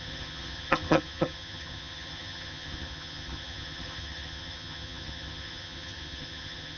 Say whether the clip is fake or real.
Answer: fake